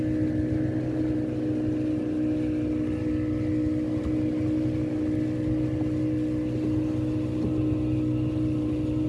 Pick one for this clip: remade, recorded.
recorded